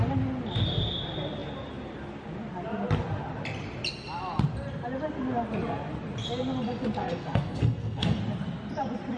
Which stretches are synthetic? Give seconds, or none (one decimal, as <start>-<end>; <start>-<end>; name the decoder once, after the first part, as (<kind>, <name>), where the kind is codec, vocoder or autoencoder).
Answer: 7.0-8.2 (codec, SNAC)